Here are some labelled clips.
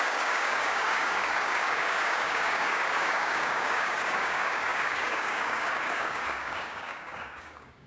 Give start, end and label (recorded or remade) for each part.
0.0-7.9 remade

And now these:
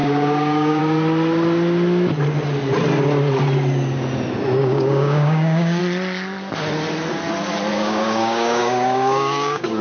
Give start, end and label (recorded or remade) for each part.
0.0-0.8 remade; 0.8-4.6 recorded; 4.6-5.8 remade; 5.8-7.7 recorded; 7.7-9.8 remade

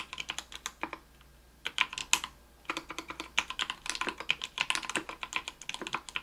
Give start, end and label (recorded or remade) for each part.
0.0-6.2 recorded

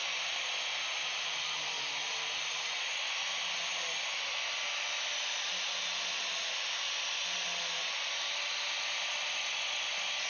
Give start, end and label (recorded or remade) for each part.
0.0-10.3 recorded

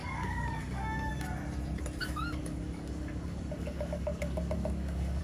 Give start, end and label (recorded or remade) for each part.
0.0-1.1 remade; 1.1-2.0 recorded; 2.0-5.2 remade